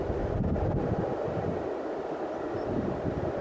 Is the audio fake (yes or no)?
yes